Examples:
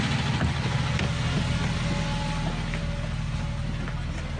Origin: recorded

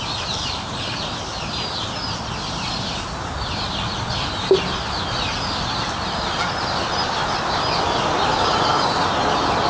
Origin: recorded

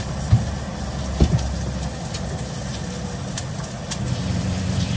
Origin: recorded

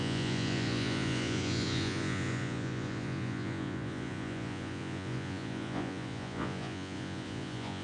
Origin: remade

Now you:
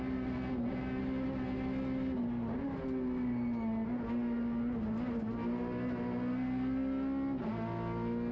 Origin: recorded